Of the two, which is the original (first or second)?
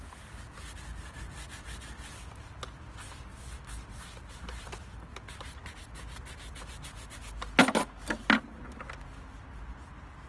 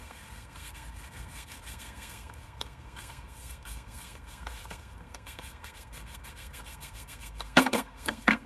first